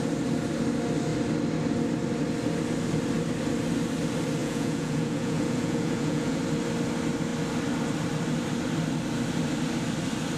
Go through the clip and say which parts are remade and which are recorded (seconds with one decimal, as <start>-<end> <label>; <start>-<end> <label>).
0.0-4.4 recorded; 4.4-6.4 remade; 6.4-10.4 recorded